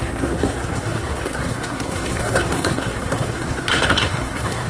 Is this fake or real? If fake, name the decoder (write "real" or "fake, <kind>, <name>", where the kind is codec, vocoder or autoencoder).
fake, codec, SNAC